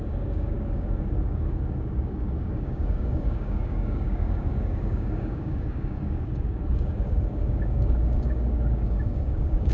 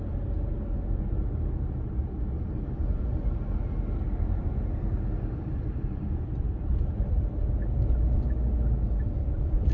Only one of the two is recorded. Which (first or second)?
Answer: second